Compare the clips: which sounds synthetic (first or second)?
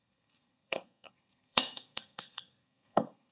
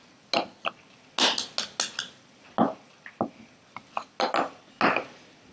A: first